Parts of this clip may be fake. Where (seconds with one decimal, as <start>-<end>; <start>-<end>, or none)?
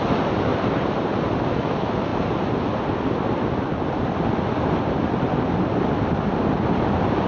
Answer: 0.5-1.1